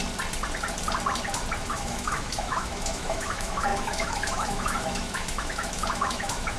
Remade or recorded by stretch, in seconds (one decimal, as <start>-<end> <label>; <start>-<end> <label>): 0.0-1.6 recorded; 1.6-6.6 remade